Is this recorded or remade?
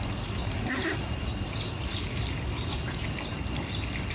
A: recorded